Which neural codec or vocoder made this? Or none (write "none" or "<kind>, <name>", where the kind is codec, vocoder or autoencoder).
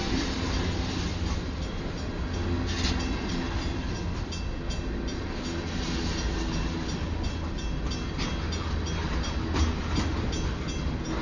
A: none